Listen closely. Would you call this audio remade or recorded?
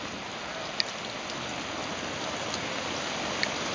recorded